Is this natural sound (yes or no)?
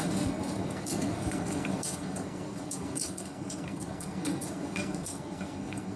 no